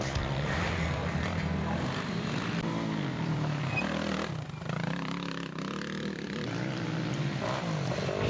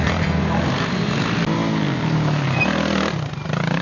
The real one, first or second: second